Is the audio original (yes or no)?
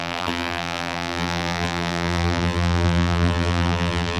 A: no